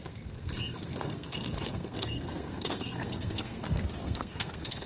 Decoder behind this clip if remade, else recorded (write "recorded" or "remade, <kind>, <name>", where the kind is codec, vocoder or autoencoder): remade, codec, SNAC